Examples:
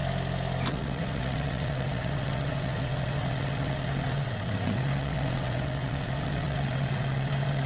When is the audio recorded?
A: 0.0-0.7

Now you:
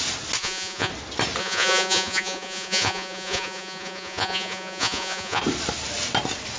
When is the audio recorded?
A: 0.0-0.4; 0.9-1.4; 5.4-6.6

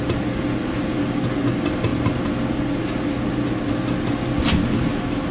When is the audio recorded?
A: 0.0-5.3

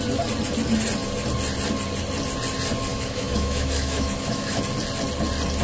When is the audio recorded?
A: 0.0-2.9; 4.6-5.6

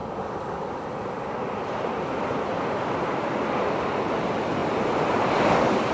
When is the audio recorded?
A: 0.0-4.6; 5.4-5.9